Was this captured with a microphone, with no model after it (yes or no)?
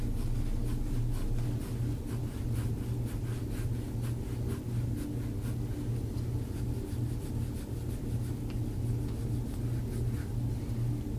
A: yes